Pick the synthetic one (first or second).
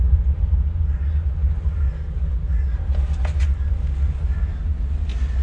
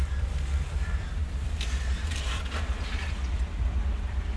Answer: second